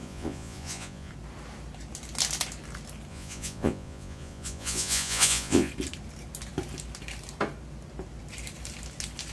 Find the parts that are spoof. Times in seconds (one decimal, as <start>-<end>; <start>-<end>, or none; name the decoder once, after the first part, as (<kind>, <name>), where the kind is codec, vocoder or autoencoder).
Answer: 0.0-1.1 (vocoder, Vocos); 3.1-5.7